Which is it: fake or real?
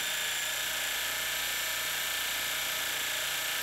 real